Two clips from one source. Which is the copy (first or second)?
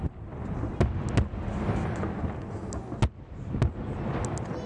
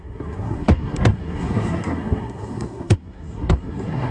second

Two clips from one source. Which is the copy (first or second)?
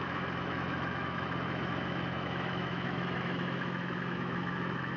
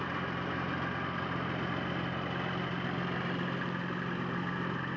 first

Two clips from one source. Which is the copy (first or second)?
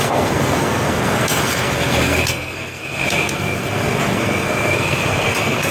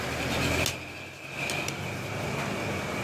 first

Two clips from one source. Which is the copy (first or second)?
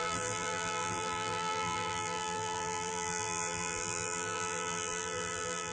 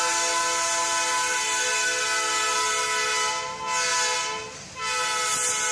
first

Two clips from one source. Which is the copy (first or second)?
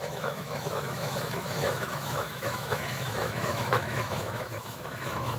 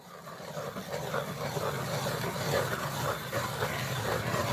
first